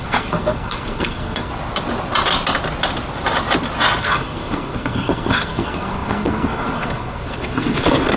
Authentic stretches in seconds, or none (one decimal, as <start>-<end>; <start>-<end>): 1.5-4.0